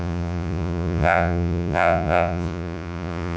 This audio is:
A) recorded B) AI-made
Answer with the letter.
B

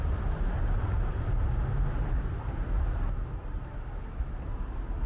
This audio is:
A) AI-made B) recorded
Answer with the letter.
B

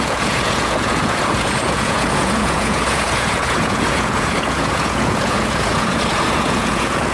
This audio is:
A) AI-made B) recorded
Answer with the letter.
A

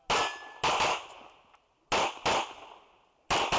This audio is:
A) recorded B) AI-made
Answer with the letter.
A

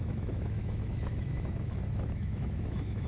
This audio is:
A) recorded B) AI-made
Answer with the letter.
B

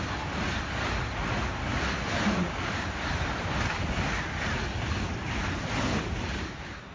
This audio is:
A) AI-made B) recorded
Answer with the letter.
B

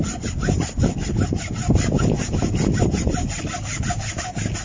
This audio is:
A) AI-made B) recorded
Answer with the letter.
B